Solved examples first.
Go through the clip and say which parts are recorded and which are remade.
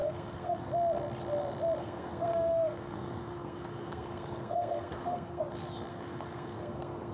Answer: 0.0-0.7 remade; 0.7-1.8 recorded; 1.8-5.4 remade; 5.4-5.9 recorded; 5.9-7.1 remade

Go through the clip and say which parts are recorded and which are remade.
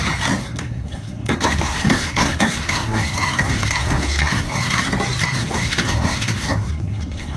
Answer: 0.0-0.4 recorded; 0.4-4.8 remade; 4.8-5.2 recorded; 5.2-7.4 remade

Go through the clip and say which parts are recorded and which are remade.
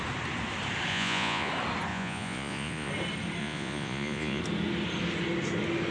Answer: 0.0-0.9 recorded; 0.9-1.5 remade; 1.5-1.9 recorded; 1.9-2.9 remade; 2.9-3.4 recorded; 3.4-4.4 remade; 4.4-5.9 recorded